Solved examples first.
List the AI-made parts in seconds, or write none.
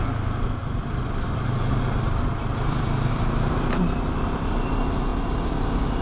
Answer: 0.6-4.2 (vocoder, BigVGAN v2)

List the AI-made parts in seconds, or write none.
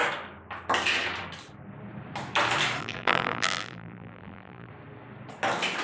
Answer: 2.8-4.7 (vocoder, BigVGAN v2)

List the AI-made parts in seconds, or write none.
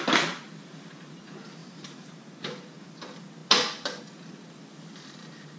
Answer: 1.6-2.9 (vocoder, BigVGAN v2)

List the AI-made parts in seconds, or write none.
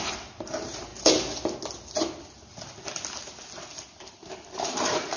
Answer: 0.0-0.9 (vocoder, BigVGAN v2); 4.0-5.2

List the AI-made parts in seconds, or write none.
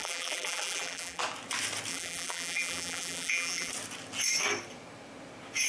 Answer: 0.0-1.2 (vocoder, BigVGAN v2); 1.9-3.7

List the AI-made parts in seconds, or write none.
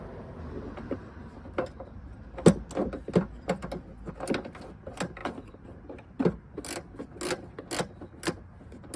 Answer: 5.2-6.5 (vocoder, BigVGAN v2)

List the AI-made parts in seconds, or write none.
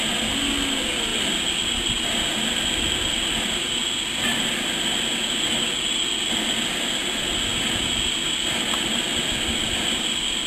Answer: none